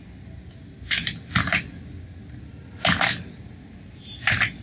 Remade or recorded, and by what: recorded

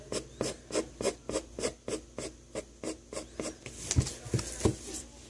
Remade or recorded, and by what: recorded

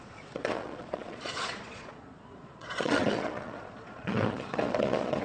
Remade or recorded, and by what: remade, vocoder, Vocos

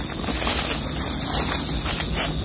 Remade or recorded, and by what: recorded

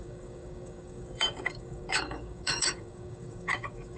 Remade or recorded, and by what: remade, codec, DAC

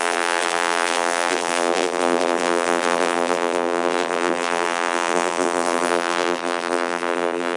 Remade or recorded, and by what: remade, vocoder, BigVGAN v2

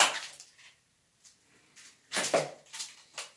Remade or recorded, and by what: remade, vocoder, BigVGAN v2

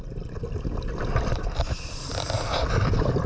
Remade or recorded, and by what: recorded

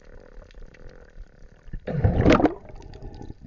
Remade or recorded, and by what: recorded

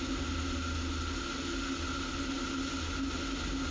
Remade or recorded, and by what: recorded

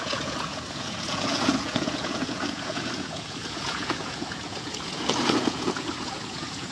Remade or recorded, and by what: remade, vocoder, Vocos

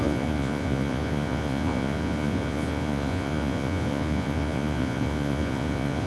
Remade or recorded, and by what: remade, vocoder, Vocos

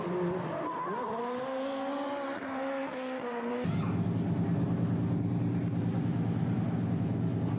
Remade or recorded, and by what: recorded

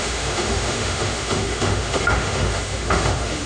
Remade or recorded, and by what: remade, autoencoder, DAC-VAE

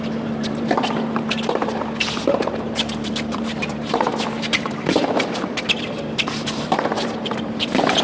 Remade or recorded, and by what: remade, vocoder, BigVGAN v2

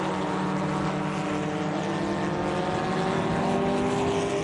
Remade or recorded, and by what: recorded